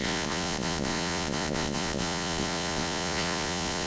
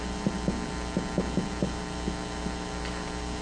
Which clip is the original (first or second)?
second